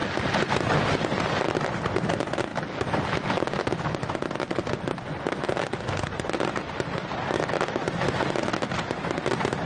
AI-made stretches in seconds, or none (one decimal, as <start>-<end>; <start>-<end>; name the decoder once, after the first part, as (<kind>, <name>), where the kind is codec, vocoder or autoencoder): none